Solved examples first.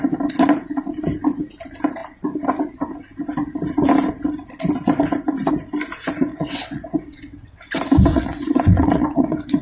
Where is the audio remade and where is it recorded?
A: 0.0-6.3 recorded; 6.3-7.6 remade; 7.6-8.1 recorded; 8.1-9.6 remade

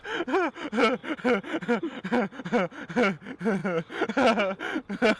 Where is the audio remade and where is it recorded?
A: 0.0-5.2 recorded

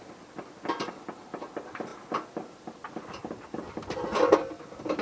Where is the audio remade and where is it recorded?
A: 0.0-5.0 recorded

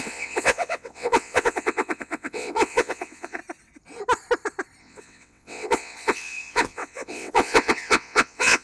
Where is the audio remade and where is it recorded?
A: 0.0-3.4 remade; 3.4-4.8 recorded; 4.8-8.6 remade

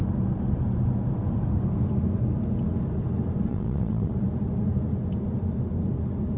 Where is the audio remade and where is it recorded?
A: 0.0-3.5 recorded; 3.5-4.1 remade; 4.1-6.4 recorded

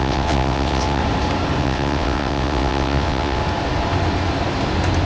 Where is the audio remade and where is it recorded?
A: 0.0-1.0 remade; 1.0-1.6 recorded; 1.6-3.4 remade; 3.4-5.1 recorded

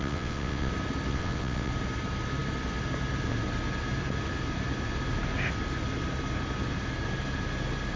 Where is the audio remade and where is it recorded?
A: 0.0-0.7 remade; 0.7-1.1 recorded; 1.1-1.7 remade; 1.7-8.0 recorded